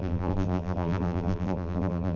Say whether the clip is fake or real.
fake